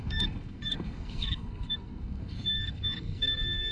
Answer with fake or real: fake